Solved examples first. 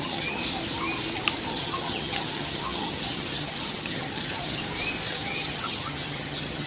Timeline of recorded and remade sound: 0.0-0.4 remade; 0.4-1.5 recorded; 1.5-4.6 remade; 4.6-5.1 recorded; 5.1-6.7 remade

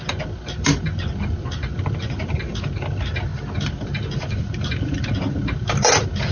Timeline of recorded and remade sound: 0.0-6.3 recorded

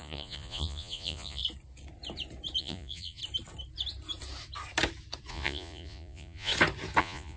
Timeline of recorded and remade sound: 0.0-1.4 remade; 1.4-2.6 recorded; 2.6-3.2 remade; 3.2-5.3 recorded; 5.3-6.5 remade; 6.5-7.0 recorded; 7.0-7.4 remade

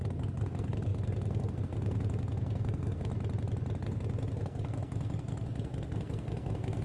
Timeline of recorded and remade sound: 0.0-3.1 remade; 3.1-3.8 recorded; 3.8-6.8 remade

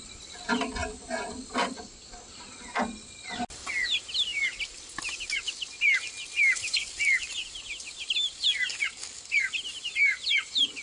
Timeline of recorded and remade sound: 0.0-10.8 recorded

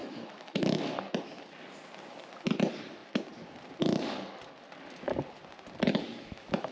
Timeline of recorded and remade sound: 0.0-1.0 remade; 1.0-6.1 recorded; 6.1-6.7 remade

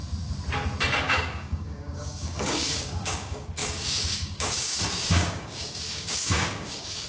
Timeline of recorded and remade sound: 0.0-1.0 recorded; 1.0-7.1 remade

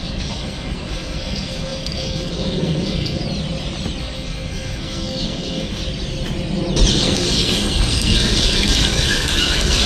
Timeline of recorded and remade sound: 0.0-3.2 remade; 3.2-4.0 recorded; 4.0-5.8 remade; 5.8-6.9 recorded; 6.9-9.9 remade